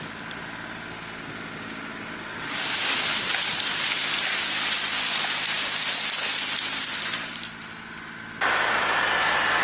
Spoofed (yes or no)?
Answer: no